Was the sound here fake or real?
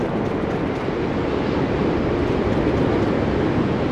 real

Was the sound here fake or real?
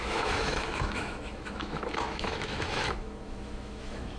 fake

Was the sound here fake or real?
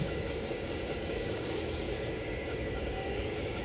fake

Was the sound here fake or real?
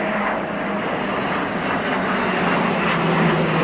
real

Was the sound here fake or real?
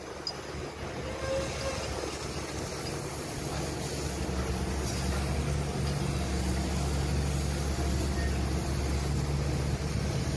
real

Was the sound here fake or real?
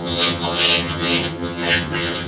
fake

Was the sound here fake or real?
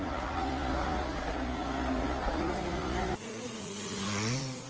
fake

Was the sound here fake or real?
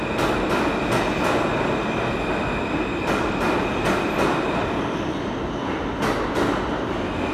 real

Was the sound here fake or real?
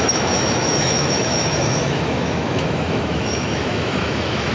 fake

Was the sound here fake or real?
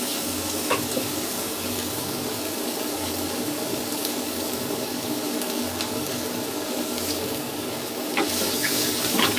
fake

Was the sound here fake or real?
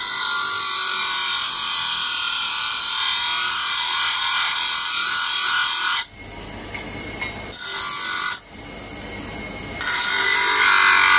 real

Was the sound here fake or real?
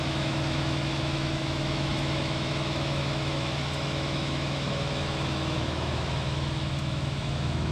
fake